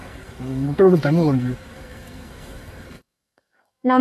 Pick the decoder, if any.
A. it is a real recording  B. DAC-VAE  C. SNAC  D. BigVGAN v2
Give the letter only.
C